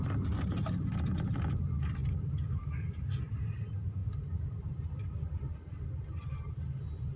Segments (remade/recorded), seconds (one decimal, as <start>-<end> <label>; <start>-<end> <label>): 0.0-7.2 recorded